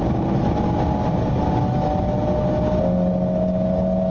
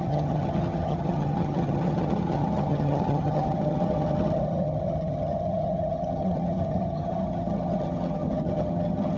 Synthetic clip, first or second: second